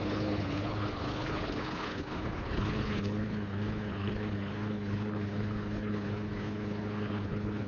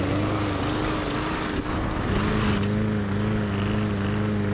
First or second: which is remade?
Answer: first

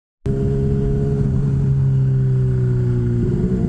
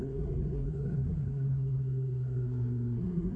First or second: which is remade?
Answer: second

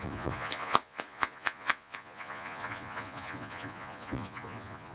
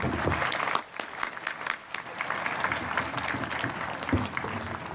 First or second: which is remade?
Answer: first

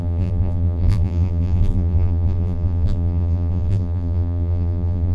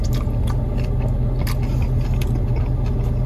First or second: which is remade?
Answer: first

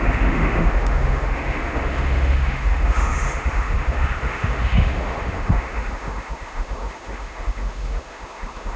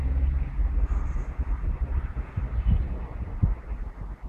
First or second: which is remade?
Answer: first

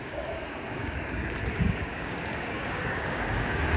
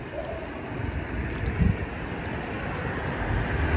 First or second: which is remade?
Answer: first